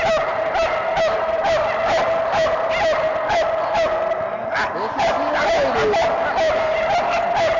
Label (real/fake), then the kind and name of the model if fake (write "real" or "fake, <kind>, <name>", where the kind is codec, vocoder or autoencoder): real